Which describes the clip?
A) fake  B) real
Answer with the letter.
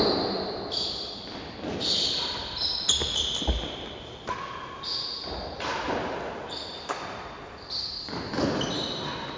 B